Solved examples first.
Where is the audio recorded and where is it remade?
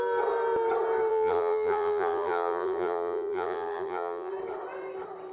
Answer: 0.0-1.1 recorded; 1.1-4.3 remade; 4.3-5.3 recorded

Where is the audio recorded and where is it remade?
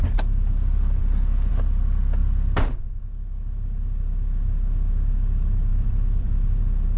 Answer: 0.0-5.7 recorded; 5.7-6.6 remade; 6.6-7.0 recorded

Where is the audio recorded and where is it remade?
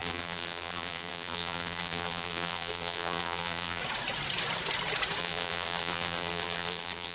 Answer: 0.0-3.8 remade; 3.8-5.2 recorded; 5.2-7.1 remade